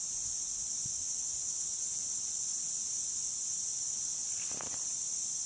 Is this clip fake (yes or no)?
no